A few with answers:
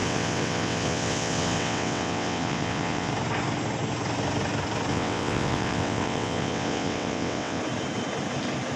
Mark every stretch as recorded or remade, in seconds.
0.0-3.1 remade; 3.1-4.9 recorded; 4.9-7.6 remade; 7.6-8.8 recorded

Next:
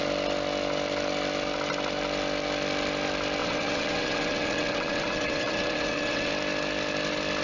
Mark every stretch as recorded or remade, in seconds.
0.0-3.4 recorded; 3.4-6.3 remade; 6.3-7.4 recorded

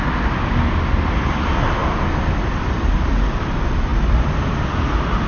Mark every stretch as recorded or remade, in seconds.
0.0-5.3 recorded

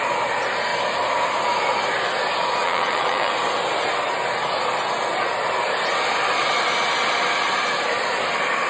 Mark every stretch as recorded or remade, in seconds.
0.0-2.6 recorded; 2.6-3.3 remade; 3.3-8.7 recorded

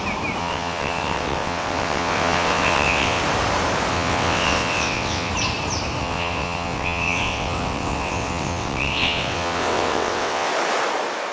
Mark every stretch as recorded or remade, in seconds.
0.0-0.4 recorded; 0.4-3.2 remade; 3.2-3.9 recorded; 3.9-5.3 remade; 5.3-6.0 recorded; 6.0-10.5 remade; 10.5-11.3 recorded

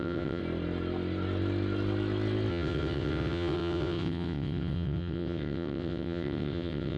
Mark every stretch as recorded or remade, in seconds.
0.0-0.4 remade; 0.4-2.5 recorded; 2.5-7.0 remade